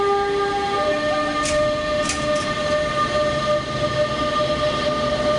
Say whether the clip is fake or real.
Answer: real